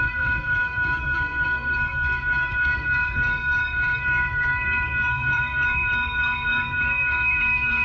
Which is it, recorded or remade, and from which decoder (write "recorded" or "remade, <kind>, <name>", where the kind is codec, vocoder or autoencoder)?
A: remade, codec, SNAC